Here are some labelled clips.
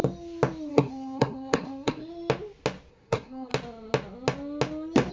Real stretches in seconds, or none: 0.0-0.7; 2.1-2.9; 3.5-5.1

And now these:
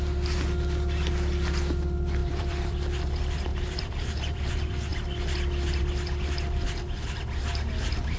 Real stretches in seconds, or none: 0.0-2.2; 3.0-3.5; 4.5-8.2

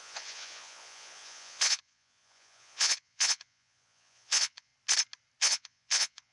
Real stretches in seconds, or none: 4.7-5.4

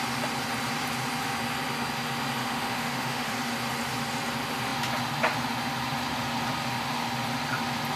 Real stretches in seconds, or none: 0.0-2.4; 3.3-8.0